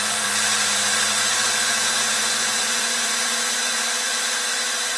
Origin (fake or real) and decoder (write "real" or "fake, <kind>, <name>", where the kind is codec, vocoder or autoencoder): fake, vocoder, Vocos